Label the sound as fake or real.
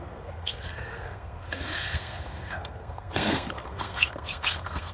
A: fake